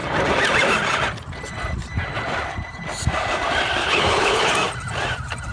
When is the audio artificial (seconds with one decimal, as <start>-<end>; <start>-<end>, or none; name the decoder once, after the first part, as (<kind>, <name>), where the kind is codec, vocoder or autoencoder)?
3.8-4.5 (codec, HILCodec)